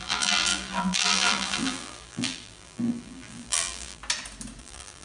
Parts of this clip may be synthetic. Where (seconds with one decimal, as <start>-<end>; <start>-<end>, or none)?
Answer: 0.0-4.0; 4.6-5.0